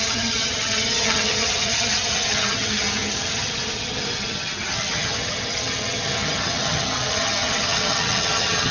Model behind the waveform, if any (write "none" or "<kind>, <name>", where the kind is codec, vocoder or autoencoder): vocoder, HiFi-GAN